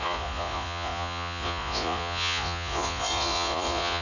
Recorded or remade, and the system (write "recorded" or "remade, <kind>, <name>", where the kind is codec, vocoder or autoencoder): remade, vocoder, Vocos